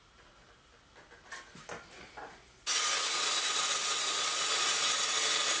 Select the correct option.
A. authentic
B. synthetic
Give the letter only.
A